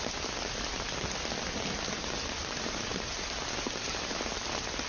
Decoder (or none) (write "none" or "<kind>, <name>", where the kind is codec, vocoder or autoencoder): none